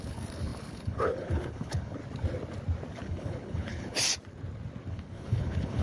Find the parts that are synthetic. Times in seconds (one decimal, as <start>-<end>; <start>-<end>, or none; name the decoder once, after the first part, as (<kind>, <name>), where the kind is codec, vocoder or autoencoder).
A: 0.0-2.0 (codec, HILCodec); 2.9-4.0; 4.9-5.8